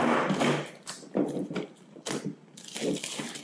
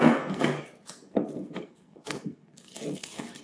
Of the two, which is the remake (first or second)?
second